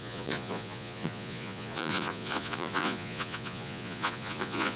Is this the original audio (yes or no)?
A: no